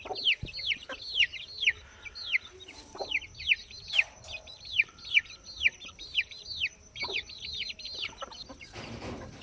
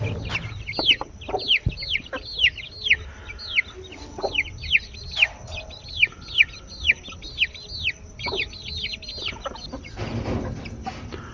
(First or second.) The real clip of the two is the second